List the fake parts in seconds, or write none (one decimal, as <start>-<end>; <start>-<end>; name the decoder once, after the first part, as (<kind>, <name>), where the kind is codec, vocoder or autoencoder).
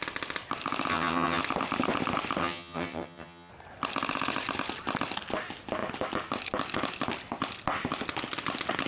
0.9-1.4 (vocoder, HiFi-GAN); 2.4-3.5